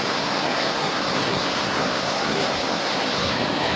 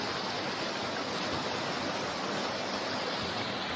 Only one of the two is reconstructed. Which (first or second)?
first